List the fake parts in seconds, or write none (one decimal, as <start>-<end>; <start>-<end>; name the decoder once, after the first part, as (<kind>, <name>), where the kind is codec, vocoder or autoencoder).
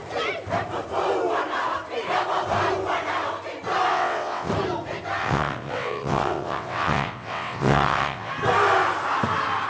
3.9-4.5 (vocoder, WaveNeXt); 5.2-8.3